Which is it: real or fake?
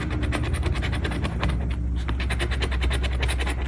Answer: real